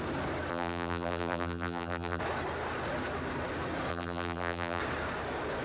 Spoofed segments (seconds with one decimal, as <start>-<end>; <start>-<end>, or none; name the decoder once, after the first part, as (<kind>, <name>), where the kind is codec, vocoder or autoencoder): 0.5-2.2 (vocoder, BigVGAN v2); 3.9-4.8